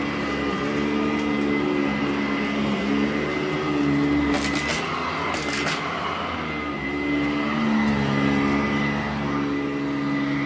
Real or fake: real